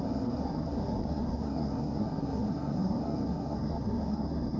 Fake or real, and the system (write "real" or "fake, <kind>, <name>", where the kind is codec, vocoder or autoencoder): fake, codec, SNAC